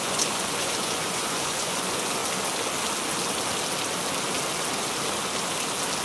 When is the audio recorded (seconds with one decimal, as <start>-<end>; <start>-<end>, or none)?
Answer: 2.2-6.0